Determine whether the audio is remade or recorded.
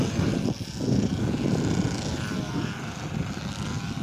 recorded